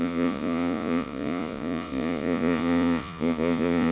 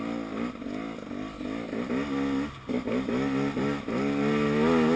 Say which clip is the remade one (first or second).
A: first